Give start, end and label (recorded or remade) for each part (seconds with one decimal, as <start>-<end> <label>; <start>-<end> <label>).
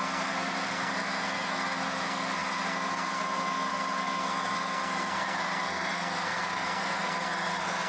0.0-7.9 remade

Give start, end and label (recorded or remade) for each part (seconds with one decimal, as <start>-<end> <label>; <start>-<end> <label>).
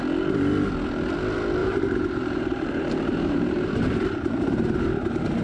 0.0-1.6 recorded; 1.6-4.8 remade; 4.8-5.4 recorded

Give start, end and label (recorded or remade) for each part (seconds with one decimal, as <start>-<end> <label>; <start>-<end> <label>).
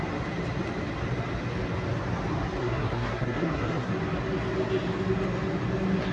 0.0-2.6 recorded; 2.6-3.9 remade; 3.9-6.1 recorded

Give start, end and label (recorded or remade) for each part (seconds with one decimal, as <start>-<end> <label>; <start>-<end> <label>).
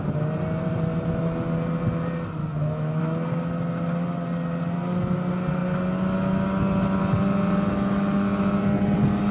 0.0-2.4 recorded; 2.4-3.0 remade; 3.0-9.3 recorded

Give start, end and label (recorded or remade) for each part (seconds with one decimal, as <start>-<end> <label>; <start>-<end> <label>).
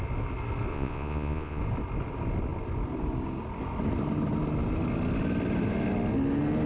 0.0-0.7 recorded; 0.7-1.6 remade; 1.6-6.7 recorded